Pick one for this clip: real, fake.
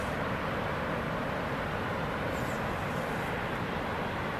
real